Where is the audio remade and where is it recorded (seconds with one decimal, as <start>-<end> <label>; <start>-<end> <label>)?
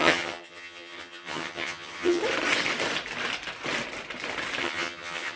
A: 0.0-2.2 remade; 2.2-4.6 recorded; 4.6-5.4 remade